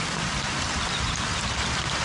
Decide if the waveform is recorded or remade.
remade